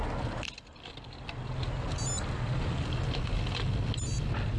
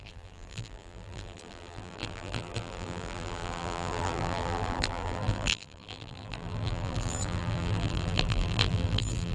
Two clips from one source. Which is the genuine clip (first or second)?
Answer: first